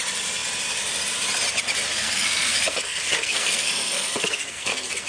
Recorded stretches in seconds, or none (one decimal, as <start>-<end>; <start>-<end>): 0.0-1.9